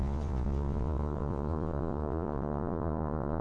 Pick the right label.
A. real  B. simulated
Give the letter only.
B